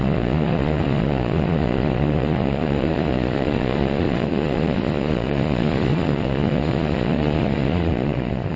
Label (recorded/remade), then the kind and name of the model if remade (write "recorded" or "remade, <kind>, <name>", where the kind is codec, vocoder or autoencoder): remade, vocoder, Vocos